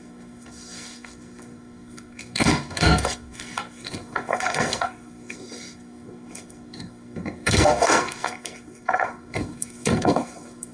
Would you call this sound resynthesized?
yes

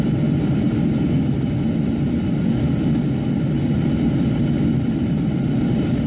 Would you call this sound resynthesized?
no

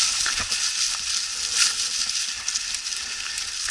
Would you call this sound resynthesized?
no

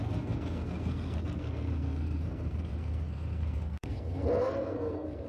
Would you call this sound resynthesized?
yes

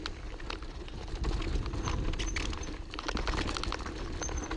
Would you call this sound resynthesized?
no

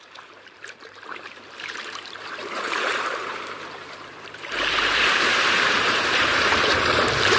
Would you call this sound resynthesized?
yes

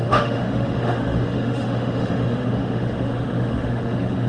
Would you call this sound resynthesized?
yes